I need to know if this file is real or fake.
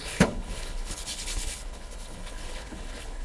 fake